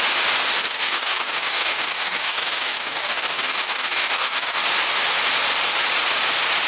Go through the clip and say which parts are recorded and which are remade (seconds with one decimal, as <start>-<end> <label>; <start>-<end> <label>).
0.0-0.6 recorded; 0.6-4.6 remade; 4.6-6.7 recorded